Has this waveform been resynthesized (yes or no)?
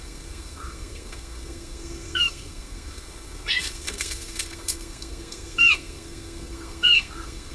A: yes